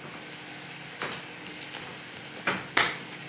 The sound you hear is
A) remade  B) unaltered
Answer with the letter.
B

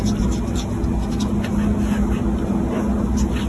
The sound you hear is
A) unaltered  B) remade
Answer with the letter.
A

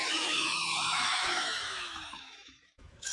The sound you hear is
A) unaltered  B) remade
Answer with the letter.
B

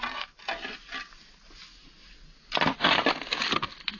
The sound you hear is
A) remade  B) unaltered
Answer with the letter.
B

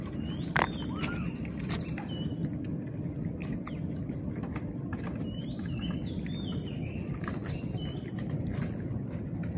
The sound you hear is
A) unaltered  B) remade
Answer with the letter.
A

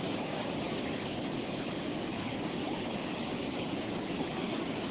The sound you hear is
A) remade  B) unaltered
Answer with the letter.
A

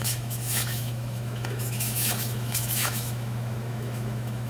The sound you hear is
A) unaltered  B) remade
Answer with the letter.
B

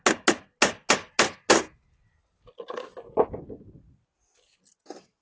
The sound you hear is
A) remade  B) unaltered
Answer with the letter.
B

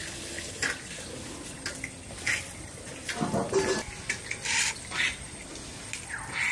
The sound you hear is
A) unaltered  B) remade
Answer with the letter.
A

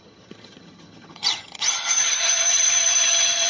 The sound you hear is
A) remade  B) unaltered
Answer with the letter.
A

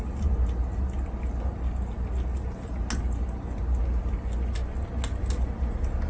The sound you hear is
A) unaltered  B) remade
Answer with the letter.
A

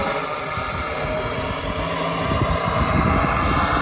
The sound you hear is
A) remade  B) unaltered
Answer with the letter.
B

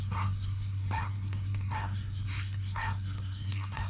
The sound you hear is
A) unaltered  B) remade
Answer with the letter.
B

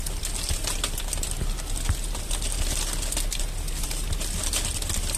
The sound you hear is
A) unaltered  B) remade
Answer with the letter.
A